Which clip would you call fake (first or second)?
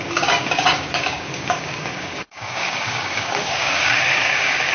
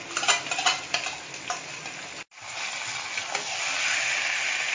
first